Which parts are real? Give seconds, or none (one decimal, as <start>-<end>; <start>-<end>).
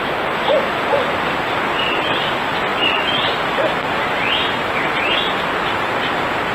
0.0-6.5